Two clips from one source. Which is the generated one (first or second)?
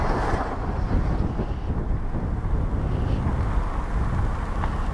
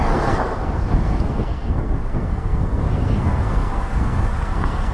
second